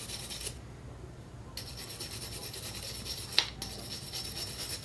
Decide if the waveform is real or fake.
real